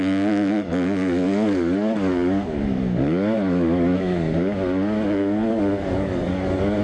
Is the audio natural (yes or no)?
no